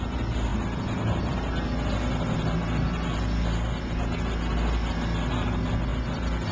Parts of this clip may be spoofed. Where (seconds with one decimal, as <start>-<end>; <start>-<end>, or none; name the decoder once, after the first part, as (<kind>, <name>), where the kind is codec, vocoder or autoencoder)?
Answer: none